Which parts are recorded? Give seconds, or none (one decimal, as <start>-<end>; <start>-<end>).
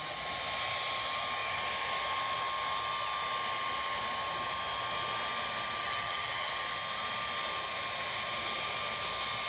0.0-5.8; 6.5-9.5